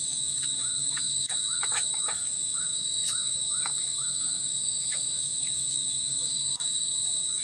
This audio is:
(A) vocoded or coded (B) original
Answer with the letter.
A